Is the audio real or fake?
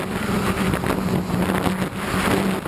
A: real